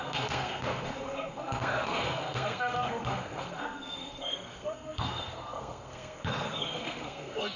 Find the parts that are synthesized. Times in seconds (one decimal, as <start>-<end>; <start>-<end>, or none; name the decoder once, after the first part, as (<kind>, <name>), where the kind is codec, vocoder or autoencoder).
0.0-7.6 (codec, SNAC)